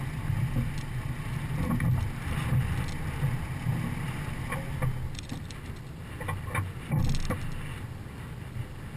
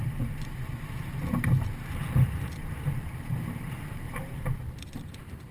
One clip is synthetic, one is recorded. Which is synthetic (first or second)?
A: second